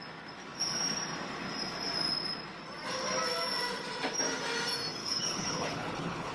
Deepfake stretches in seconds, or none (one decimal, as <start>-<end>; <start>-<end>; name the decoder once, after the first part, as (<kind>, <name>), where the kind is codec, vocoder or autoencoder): 5.0-6.3 (codec, HILCodec)